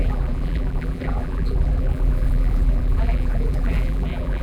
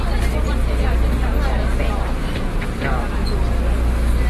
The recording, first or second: second